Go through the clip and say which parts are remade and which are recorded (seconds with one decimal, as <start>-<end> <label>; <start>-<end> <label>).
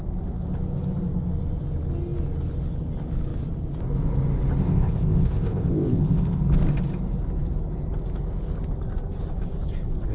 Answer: 0.0-4.6 recorded; 4.6-6.4 remade; 6.4-10.1 recorded